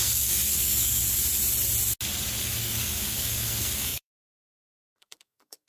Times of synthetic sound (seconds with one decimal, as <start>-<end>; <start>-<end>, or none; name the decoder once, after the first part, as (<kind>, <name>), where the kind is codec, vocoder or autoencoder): 0.0-1.0 (codec, SNAC); 2.4-5.7